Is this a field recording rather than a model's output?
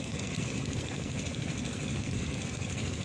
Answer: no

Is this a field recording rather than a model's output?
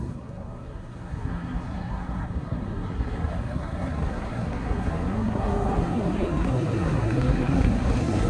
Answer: no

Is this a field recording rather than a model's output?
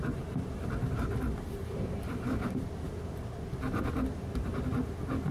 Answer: yes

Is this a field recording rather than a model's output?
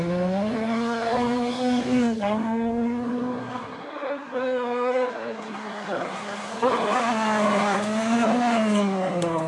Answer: no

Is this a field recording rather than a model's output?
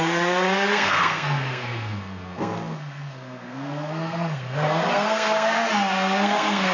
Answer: no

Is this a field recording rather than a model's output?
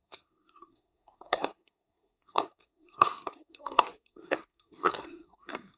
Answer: no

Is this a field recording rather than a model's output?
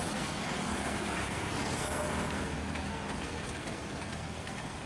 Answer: no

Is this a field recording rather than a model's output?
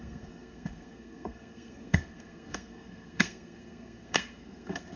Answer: no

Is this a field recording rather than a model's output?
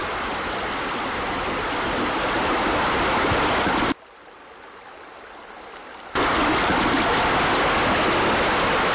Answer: yes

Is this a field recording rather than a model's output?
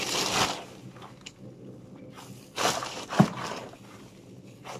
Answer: yes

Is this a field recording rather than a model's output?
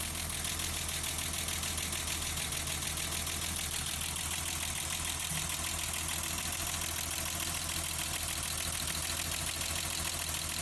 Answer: yes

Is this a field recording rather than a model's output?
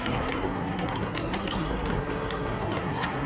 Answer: no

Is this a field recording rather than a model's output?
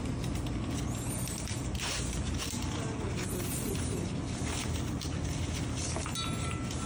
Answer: yes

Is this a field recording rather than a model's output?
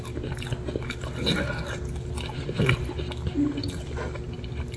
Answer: yes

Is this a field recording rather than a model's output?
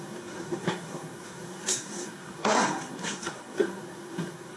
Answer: no